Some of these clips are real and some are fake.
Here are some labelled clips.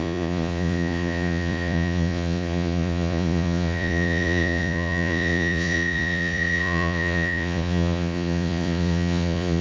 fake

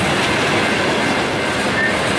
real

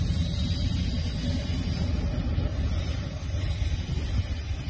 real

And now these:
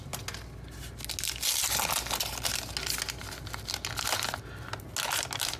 real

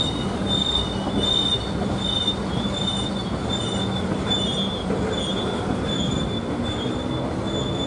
real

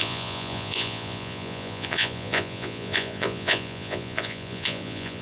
fake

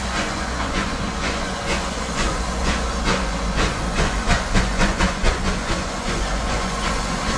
fake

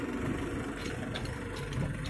real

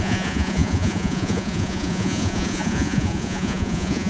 fake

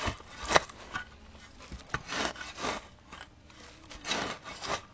real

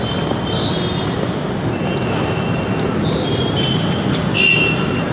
real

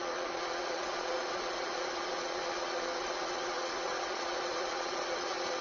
fake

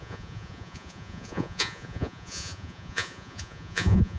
fake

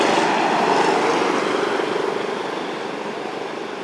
real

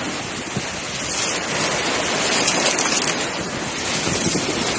real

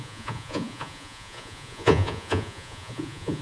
fake